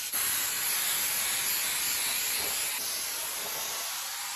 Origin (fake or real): real